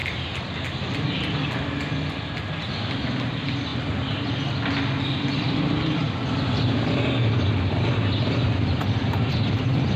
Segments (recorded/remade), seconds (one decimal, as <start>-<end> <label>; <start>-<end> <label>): 0.0-2.4 recorded; 2.4-3.7 remade; 3.7-5.4 recorded; 5.4-6.0 remade; 6.0-7.9 recorded; 7.9-10.0 remade